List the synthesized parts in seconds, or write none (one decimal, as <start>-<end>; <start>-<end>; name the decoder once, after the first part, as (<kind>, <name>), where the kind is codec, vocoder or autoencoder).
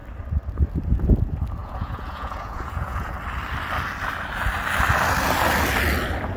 1.6-3.1 (vocoder, Vocos)